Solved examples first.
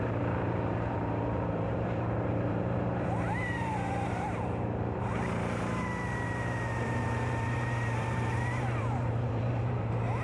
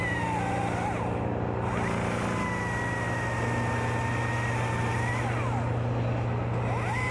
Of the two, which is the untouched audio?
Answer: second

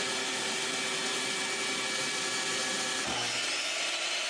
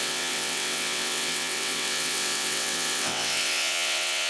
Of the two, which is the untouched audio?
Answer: first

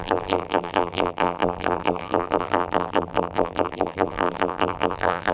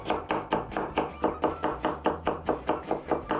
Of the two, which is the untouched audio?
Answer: second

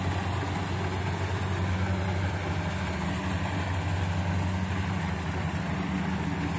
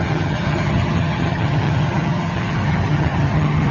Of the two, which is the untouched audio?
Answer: first